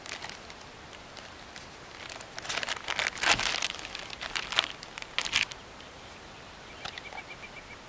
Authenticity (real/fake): real